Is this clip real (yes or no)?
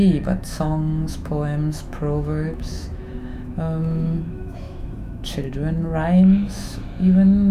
no